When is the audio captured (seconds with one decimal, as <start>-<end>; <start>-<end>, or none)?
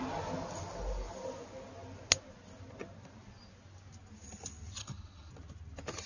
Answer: 0.0-4.8; 5.3-6.1